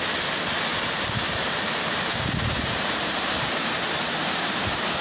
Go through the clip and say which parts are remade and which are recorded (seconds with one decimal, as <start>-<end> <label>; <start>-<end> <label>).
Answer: 0.0-0.7 recorded; 0.7-3.7 remade; 3.7-5.0 recorded